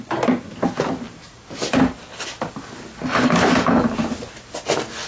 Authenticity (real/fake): real